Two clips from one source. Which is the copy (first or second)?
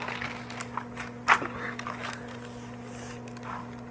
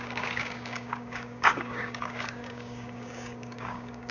second